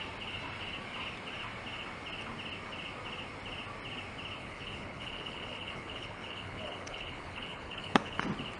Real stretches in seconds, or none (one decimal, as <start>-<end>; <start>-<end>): 0.0-4.4; 8.2-8.6